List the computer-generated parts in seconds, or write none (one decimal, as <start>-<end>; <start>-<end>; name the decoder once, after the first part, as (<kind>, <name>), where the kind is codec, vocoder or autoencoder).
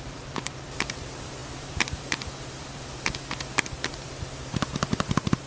0.0-5.5 (vocoder, BigVGAN v2)